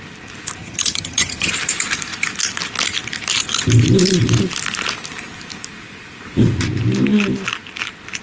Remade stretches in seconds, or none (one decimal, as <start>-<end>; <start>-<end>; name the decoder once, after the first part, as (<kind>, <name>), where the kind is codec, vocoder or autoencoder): 0.6-1.5 (vocoder, HiFi-GAN)